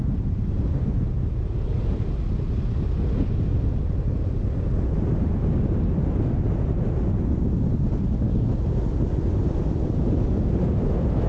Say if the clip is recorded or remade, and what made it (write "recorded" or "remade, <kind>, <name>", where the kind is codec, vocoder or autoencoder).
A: recorded